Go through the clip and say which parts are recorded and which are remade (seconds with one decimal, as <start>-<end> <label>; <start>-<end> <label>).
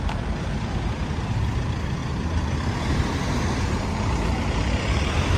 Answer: 0.0-5.4 recorded